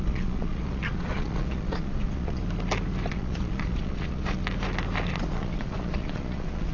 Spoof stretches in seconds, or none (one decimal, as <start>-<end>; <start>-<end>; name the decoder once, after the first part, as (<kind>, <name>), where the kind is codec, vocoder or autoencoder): 0.0-2.4 (vocoder, Vocos); 3.1-4.4; 5.1-6.7